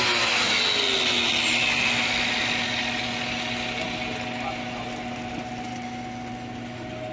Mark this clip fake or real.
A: real